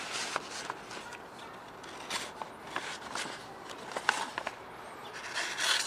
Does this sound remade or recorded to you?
recorded